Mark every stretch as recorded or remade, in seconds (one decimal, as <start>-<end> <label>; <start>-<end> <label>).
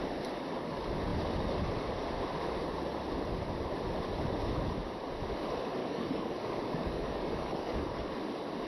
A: 0.0-5.8 recorded; 5.8-8.1 remade; 8.1-8.7 recorded